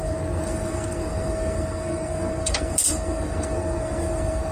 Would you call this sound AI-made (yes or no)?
yes